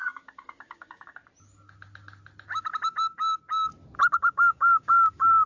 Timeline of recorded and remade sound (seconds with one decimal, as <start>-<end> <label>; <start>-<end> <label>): 0.0-1.2 remade; 1.2-4.1 recorded; 4.1-5.5 remade

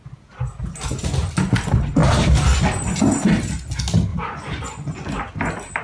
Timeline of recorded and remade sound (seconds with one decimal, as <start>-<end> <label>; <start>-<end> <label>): 0.0-4.1 recorded; 4.1-5.2 remade; 5.2-5.8 recorded

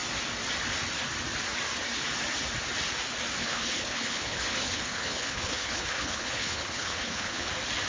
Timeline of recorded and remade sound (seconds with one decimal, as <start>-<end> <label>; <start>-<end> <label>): 0.0-3.4 recorded; 3.4-7.5 remade; 7.5-7.9 recorded